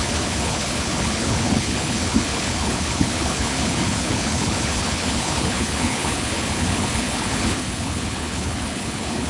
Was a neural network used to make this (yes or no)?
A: yes